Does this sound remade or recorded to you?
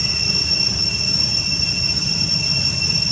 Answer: recorded